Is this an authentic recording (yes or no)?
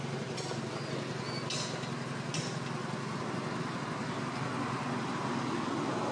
yes